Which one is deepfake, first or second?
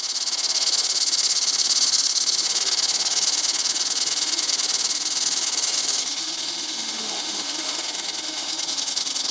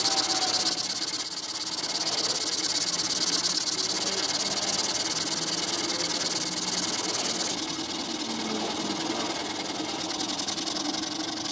first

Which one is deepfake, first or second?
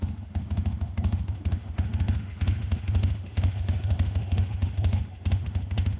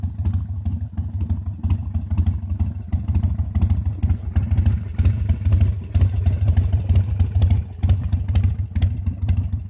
first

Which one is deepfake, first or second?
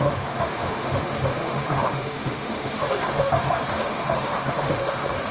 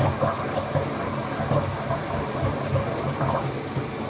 first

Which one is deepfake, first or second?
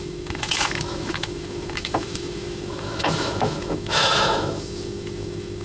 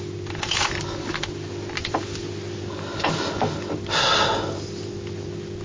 first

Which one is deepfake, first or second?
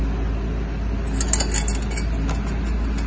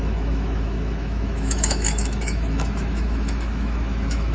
second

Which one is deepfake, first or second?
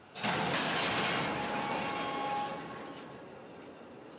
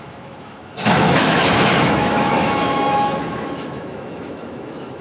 second